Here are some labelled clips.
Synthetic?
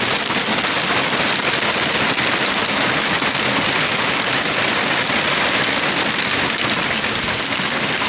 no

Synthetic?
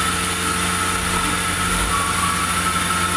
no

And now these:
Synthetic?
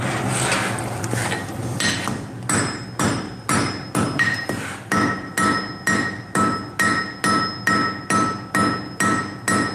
no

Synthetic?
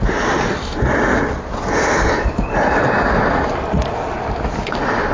no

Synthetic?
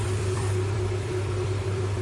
yes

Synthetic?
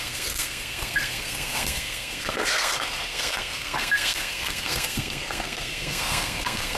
yes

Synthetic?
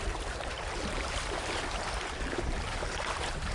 yes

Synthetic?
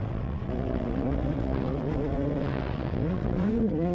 yes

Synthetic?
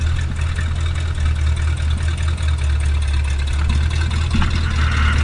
no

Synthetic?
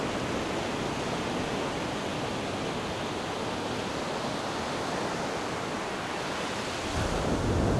no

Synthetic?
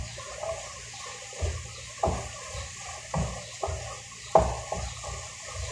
no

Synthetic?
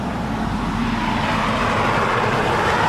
no